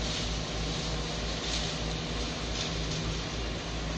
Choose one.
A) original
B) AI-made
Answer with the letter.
A